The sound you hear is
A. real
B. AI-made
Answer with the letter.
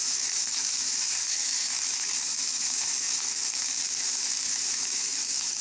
B